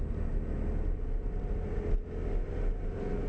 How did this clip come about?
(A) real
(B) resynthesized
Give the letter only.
A